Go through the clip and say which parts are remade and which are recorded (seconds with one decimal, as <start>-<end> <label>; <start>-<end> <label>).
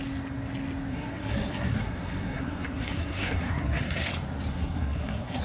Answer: 0.0-0.9 recorded; 0.9-4.1 remade; 4.1-4.5 recorded; 4.5-5.4 remade